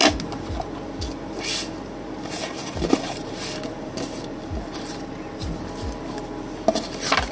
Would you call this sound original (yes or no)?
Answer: yes